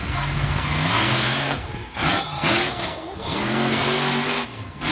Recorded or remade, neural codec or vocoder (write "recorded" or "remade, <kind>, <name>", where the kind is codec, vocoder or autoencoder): remade, codec, SNAC